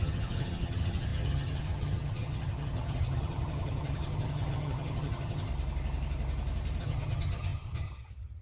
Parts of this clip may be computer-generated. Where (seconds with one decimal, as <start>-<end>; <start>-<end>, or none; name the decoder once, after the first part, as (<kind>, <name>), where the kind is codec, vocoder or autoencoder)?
0.0-5.5 (vocoder, HiFi-GAN); 6.8-8.4